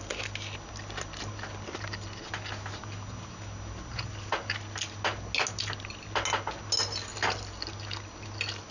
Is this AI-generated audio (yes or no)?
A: no